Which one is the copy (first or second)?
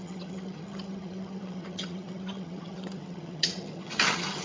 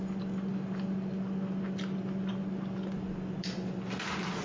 first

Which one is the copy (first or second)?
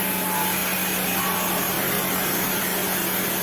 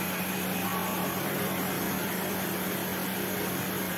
second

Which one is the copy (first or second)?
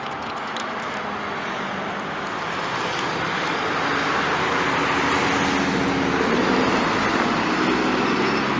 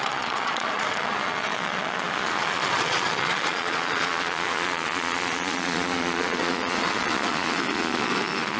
second